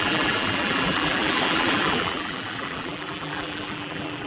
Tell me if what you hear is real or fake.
fake